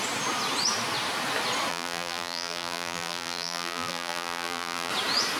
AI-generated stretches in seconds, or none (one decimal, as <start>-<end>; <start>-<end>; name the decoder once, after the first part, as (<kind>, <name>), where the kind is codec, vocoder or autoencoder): 1.7-4.9 (vocoder, BigVGAN v2)